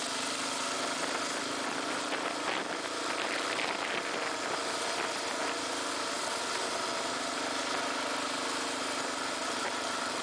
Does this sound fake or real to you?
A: real